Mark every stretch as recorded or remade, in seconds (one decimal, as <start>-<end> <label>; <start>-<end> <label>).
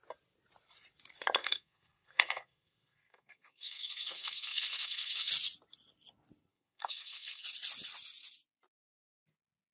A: 0.0-1.4 recorded; 1.4-5.3 remade; 5.3-6.5 recorded; 6.5-7.4 remade; 7.4-9.7 recorded